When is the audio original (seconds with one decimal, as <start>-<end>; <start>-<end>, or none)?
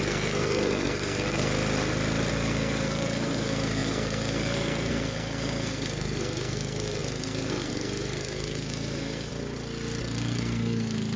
1.5-2.3; 9.3-10.0